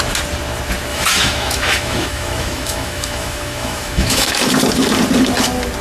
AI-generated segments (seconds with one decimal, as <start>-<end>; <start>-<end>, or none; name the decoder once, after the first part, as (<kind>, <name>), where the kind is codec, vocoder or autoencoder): 0.9-4.4 (autoencoder, DAC-VAE)